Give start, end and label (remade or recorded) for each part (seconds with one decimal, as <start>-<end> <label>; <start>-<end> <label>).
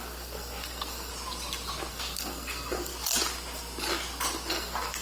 0.0-1.1 remade; 1.1-1.9 recorded; 1.9-2.9 remade; 2.9-4.5 recorded; 4.5-5.0 remade